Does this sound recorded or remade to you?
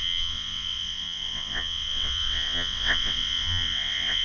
remade